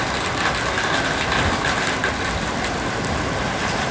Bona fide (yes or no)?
yes